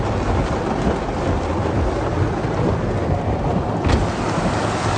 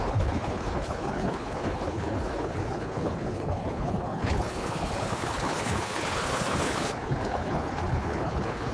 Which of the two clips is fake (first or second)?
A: second